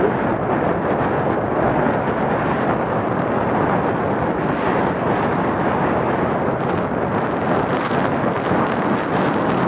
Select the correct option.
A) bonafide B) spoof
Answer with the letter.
A